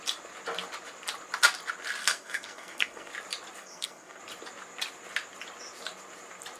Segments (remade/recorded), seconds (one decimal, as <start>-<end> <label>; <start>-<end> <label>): 0.0-2.0 recorded; 2.0-3.1 remade; 3.1-3.6 recorded; 3.6-4.2 remade; 4.2-6.6 recorded